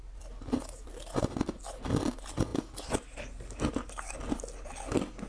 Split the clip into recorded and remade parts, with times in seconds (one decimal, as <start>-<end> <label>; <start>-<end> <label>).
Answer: 0.0-5.3 recorded